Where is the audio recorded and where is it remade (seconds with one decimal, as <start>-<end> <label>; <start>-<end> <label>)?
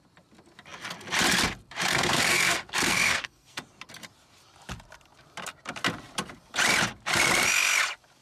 0.0-1.9 recorded; 1.9-3.6 remade; 3.6-8.2 recorded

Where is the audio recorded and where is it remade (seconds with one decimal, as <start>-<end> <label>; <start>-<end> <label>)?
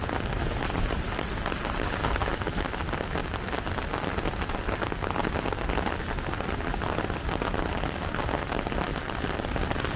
0.0-10.0 recorded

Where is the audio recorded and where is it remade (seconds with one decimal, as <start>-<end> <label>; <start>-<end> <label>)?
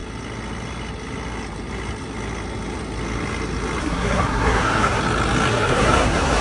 0.0-3.8 recorded; 3.8-5.0 remade; 5.0-5.5 recorded; 5.5-6.4 remade